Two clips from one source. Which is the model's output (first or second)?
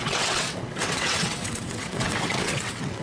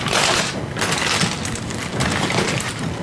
first